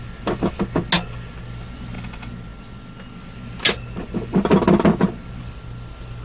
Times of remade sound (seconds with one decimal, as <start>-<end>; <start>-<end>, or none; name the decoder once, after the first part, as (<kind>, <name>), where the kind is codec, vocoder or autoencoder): none